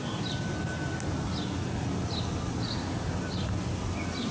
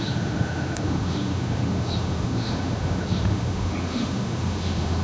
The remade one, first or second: second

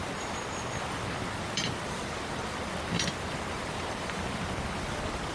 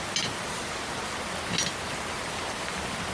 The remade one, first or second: first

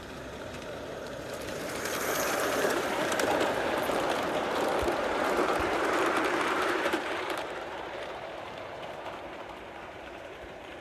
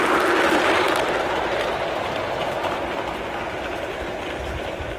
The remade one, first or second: first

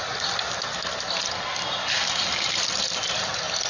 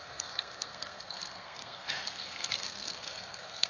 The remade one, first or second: second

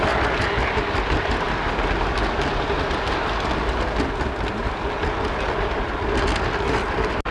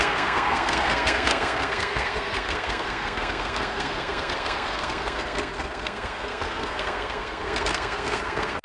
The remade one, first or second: second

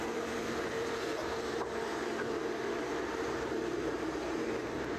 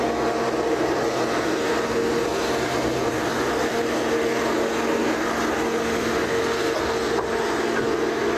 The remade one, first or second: first